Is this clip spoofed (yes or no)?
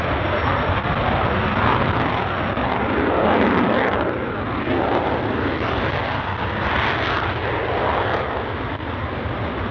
no